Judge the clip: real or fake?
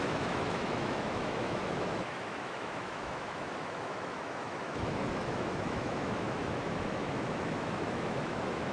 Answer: fake